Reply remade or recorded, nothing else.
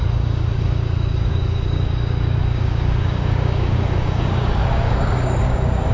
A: remade